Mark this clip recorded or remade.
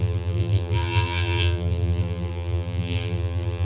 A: remade